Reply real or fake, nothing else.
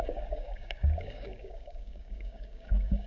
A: fake